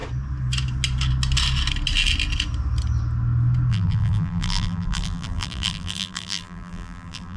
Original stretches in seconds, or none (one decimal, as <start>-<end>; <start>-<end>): 0.0-3.7